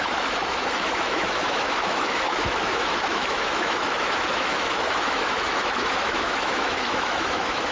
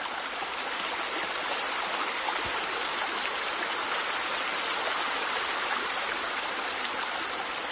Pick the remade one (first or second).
first